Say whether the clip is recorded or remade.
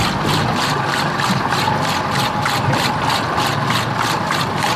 recorded